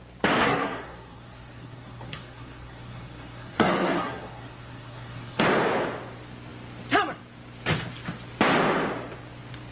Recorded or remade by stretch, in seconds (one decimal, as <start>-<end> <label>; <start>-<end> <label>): 0.0-0.4 recorded; 0.4-5.4 remade; 5.4-9.7 recorded